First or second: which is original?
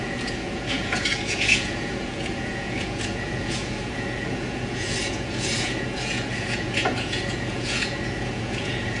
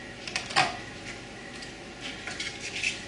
second